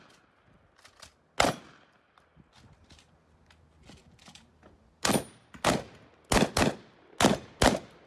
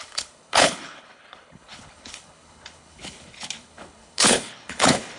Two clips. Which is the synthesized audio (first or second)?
second